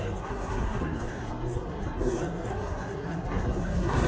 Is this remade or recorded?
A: remade